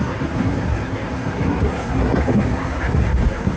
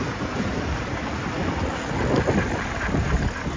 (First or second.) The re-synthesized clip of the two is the first